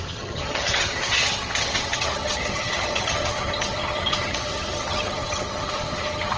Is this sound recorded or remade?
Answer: remade